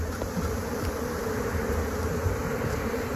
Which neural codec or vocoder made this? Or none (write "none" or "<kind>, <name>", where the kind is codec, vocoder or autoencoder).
vocoder, BigVGAN v2